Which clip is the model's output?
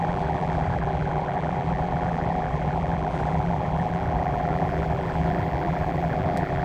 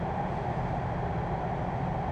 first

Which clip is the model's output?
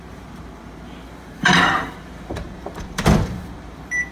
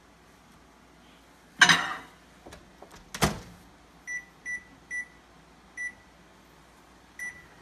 first